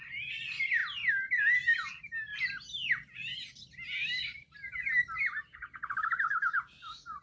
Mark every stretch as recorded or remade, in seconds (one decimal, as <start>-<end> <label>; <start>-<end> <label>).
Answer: 0.0-5.0 recorded; 5.0-6.0 remade; 6.0-7.2 recorded